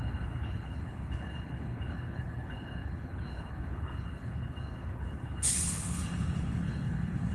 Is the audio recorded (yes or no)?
no